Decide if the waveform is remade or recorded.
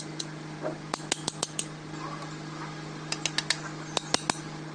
recorded